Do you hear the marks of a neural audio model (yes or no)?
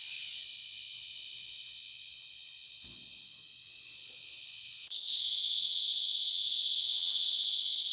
yes